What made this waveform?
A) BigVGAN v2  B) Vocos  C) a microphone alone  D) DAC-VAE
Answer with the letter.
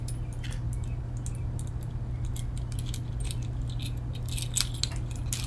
C